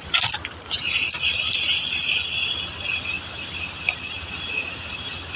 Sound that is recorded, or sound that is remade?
recorded